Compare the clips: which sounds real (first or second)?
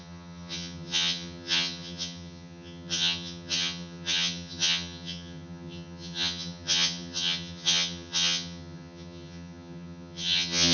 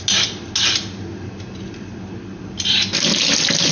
second